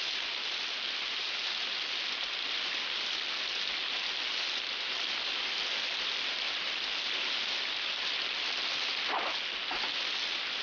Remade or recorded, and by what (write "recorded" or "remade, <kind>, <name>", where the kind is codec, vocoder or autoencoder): recorded